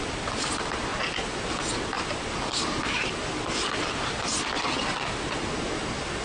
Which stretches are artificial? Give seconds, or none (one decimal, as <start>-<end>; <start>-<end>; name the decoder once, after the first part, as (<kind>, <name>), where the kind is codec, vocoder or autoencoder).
none